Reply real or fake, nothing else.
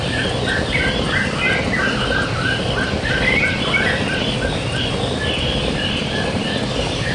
real